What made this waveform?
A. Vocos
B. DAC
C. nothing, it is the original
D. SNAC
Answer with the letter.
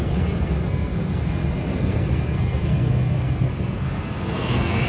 D